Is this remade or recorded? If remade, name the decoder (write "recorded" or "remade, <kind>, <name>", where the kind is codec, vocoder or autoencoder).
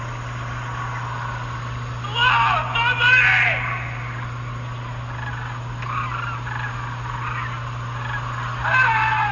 recorded